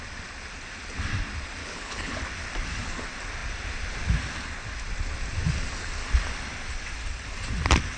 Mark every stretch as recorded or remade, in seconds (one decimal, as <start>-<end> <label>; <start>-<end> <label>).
0.0-1.6 recorded; 1.6-2.2 remade; 2.2-8.0 recorded